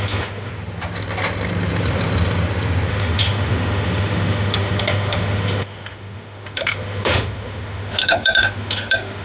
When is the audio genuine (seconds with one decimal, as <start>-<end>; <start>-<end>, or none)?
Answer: 0.5-2.9